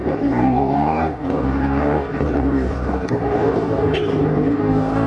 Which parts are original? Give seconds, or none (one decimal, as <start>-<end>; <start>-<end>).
none